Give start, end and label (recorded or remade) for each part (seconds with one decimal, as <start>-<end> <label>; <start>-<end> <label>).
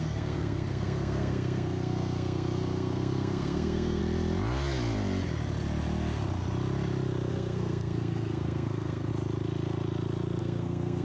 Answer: 0.0-4.0 remade; 4.0-7.3 recorded; 7.3-9.1 remade; 9.1-10.4 recorded; 10.4-11.0 remade